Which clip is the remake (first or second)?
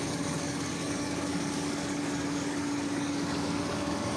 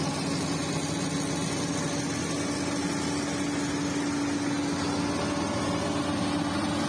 first